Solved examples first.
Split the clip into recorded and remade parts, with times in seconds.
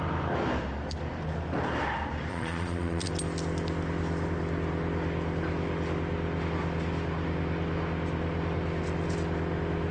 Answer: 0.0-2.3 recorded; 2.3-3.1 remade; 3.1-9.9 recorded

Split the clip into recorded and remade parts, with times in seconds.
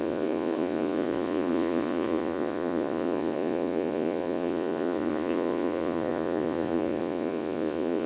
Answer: 0.0-8.1 remade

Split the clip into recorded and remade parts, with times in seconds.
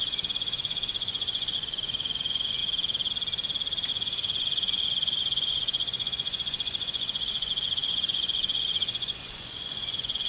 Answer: 0.0-2.6 remade; 2.6-3.9 recorded; 3.9-10.3 remade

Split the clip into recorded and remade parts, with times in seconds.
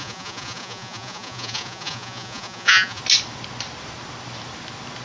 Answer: 0.0-3.0 remade; 3.0-5.0 recorded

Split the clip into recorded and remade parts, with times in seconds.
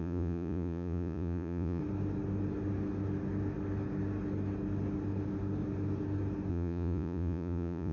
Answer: 0.0-1.8 remade; 1.8-6.5 recorded; 6.5-7.9 remade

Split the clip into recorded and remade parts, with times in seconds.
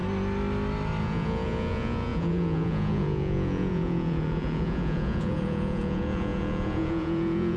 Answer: 0.0-1.0 recorded; 1.0-7.6 remade